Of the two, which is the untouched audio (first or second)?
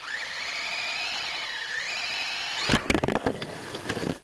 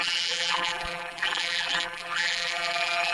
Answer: first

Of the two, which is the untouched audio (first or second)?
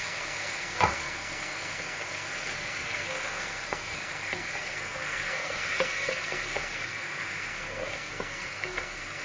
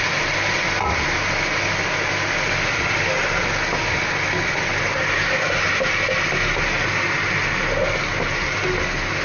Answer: second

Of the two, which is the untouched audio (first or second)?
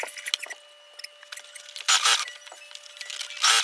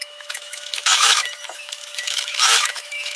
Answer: first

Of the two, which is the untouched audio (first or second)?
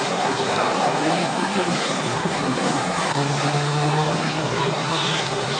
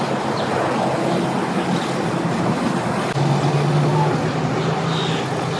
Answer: second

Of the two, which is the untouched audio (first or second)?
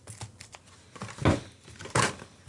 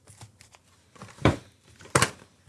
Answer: first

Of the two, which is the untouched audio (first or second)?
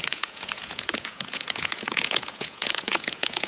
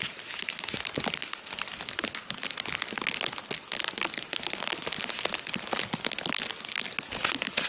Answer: second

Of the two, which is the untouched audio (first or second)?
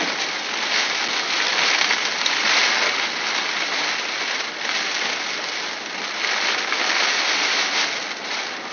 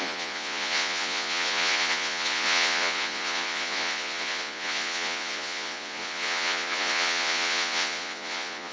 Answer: first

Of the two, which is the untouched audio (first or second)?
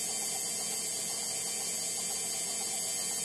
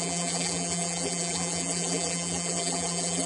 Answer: first